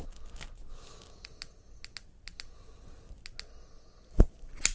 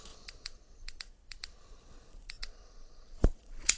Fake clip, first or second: second